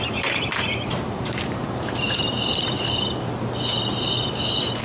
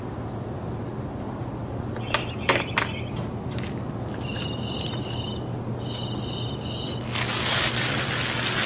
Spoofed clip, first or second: first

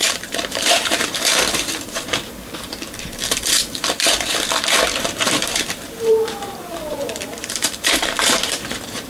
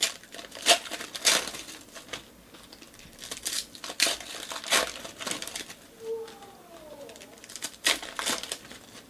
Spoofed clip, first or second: first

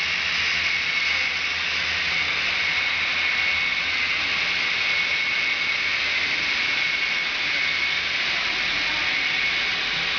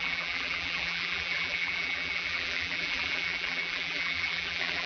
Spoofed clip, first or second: second